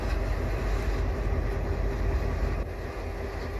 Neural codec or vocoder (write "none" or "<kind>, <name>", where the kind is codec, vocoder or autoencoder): none